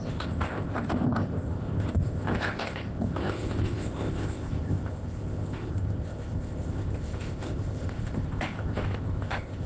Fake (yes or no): yes